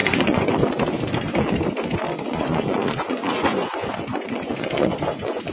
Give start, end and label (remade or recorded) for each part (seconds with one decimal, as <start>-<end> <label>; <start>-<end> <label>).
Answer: 0.0-0.5 remade; 0.5-2.3 recorded; 2.3-5.5 remade